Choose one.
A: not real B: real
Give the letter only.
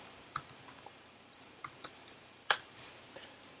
A